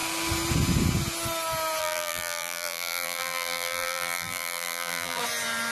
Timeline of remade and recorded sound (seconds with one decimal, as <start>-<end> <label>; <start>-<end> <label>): 0.0-1.8 recorded; 1.8-5.2 remade; 5.2-5.7 recorded

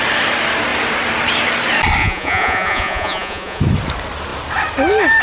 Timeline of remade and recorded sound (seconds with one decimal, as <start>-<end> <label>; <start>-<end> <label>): 0.0-2.0 recorded; 2.0-3.6 remade; 3.6-5.2 recorded

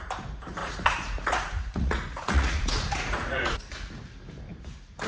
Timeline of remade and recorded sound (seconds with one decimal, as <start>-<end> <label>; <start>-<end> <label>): 0.0-0.6 recorded; 0.6-3.6 remade; 3.6-5.1 recorded

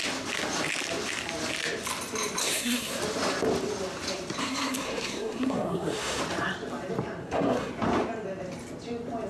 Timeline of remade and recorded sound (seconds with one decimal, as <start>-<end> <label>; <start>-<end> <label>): 0.0-2.4 recorded; 2.4-3.0 remade; 3.0-4.4 recorded; 4.4-6.2 remade; 6.2-7.2 recorded; 7.2-7.7 remade; 7.7-9.3 recorded

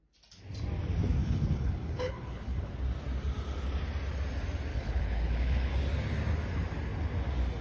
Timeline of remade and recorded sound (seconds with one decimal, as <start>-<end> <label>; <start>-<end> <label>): 0.0-1.2 recorded; 1.2-2.7 remade; 2.7-4.7 recorded; 4.7-5.7 remade; 5.7-7.6 recorded

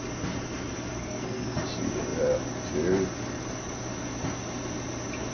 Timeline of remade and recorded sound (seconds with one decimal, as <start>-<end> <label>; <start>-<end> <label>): 0.0-0.9 recorded; 0.9-1.6 remade; 1.6-5.3 recorded

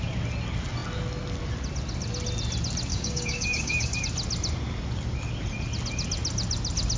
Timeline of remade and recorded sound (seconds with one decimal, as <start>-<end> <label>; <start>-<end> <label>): 0.0-2.9 recorded; 2.9-4.0 remade; 4.0-7.0 recorded